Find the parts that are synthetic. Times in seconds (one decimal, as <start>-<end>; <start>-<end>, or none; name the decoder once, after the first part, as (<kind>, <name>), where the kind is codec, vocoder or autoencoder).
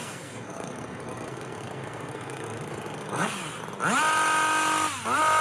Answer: 0.0-3.4 (codec, SNAC)